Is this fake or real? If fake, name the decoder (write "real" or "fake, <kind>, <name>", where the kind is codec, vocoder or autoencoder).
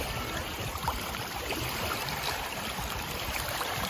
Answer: fake, vocoder, BigVGAN v2